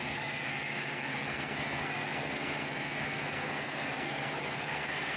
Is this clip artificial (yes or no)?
yes